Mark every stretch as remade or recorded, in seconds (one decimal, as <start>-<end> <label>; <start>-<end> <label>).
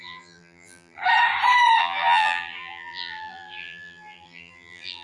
0.0-1.0 remade; 1.0-1.8 recorded; 1.8-5.0 remade